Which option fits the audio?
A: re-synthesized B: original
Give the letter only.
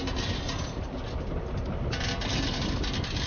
B